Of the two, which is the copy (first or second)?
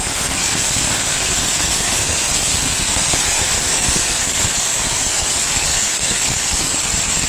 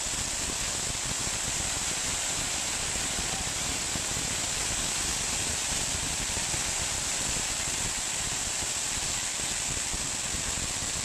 first